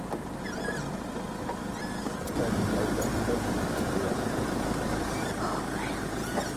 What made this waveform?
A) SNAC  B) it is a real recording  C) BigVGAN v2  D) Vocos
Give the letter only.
B